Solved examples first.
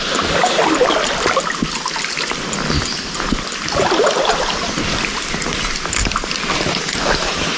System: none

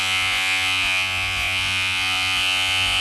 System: vocoder, Vocos